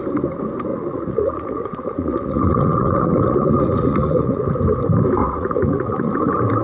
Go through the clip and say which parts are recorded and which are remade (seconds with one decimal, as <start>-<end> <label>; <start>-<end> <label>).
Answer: 0.0-0.7 recorded; 0.7-4.5 remade; 4.5-5.2 recorded; 5.2-6.1 remade; 6.1-6.6 recorded